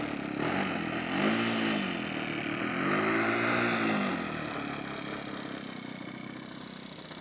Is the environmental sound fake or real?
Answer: real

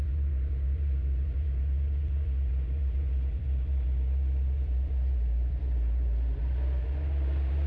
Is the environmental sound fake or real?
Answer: fake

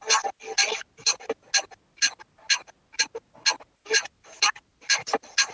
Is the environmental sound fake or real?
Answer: real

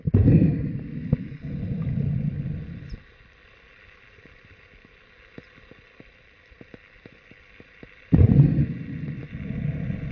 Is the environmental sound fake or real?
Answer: fake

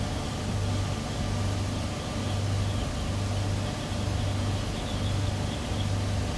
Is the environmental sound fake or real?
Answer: real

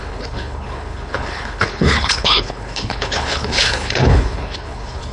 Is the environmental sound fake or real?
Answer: fake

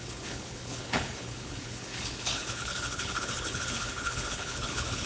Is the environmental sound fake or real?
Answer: fake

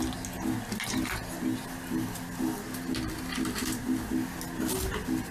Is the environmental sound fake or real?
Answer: real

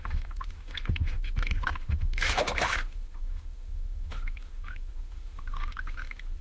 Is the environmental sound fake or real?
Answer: fake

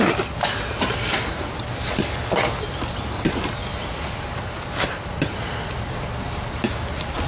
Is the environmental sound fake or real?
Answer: real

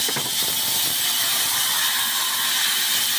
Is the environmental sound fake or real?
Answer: real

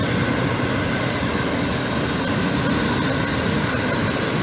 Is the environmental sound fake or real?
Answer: real